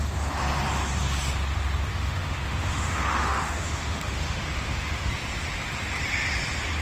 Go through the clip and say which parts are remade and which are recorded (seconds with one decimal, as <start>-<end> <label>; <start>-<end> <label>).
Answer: 0.0-1.9 recorded; 1.9-5.1 remade; 5.1-6.8 recorded